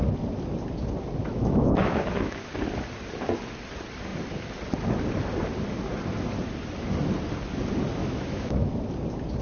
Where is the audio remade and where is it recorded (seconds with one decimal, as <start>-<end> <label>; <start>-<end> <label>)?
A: 0.0-1.2 recorded; 1.2-2.5 remade; 2.5-8.0 recorded; 8.0-8.7 remade; 8.7-9.4 recorded

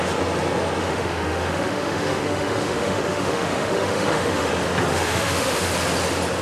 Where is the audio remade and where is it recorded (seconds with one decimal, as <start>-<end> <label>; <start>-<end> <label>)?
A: 0.0-0.8 recorded; 0.8-4.5 remade; 4.5-4.9 recorded; 4.9-5.7 remade; 5.7-6.4 recorded